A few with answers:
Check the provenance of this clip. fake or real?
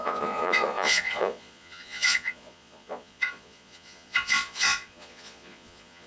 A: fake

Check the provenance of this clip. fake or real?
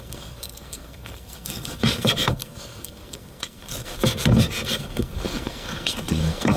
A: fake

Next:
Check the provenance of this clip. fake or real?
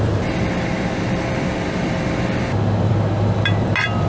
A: fake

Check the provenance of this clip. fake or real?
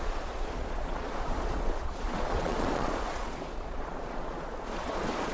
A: fake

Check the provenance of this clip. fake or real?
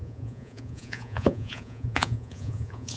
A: fake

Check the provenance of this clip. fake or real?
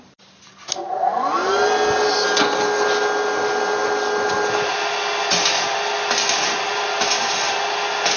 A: real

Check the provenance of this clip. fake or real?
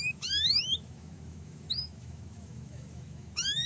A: fake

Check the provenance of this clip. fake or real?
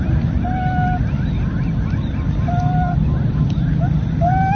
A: real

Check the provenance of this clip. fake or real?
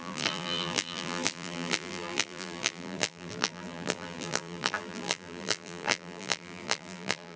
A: fake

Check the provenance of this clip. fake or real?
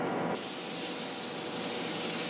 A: real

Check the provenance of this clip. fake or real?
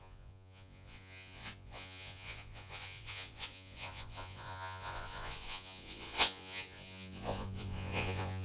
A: fake